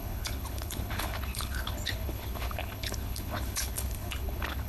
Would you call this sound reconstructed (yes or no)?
yes